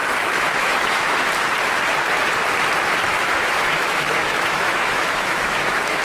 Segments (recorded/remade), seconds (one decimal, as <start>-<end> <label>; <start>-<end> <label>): 0.0-1.2 remade; 1.2-3.1 recorded; 3.1-6.0 remade